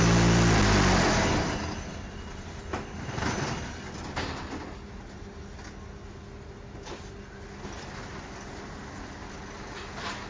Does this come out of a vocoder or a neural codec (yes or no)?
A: no